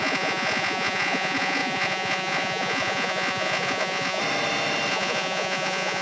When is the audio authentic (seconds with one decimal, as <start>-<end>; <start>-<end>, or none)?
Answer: 4.2-4.9